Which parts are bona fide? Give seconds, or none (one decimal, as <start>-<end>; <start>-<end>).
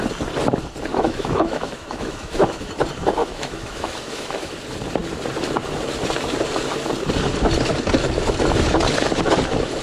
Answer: 0.0-0.9; 2.7-3.2; 4.5-9.8